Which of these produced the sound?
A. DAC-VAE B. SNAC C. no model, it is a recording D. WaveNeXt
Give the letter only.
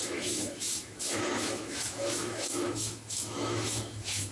A